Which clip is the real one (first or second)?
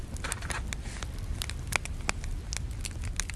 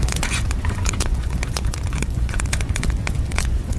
first